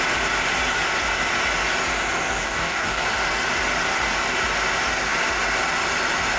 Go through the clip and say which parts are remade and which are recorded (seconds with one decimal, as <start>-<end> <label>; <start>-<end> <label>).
0.0-2.4 recorded; 2.4-3.0 remade; 3.0-6.4 recorded